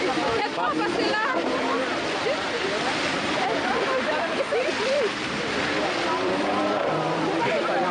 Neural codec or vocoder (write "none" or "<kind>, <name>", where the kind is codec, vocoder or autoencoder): vocoder, BigVGAN v2